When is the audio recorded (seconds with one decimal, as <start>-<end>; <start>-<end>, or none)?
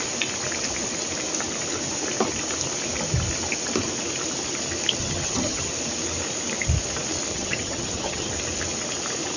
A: 0.0-5.0; 5.7-7.3; 8.3-9.4